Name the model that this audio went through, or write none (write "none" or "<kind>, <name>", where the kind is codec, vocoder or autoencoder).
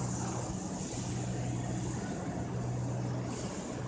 none